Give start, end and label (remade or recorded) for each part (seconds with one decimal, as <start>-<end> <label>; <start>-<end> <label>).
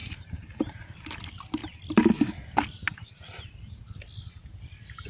0.0-0.8 remade; 0.8-5.1 recorded